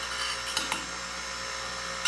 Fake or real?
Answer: real